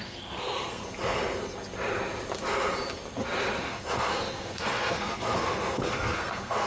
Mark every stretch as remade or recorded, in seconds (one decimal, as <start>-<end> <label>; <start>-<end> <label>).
0.0-0.8 remade; 0.8-3.6 recorded; 3.6-6.7 remade